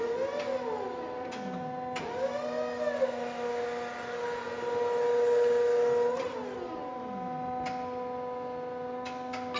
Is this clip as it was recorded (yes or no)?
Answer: yes